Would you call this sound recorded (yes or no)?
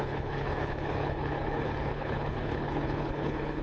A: no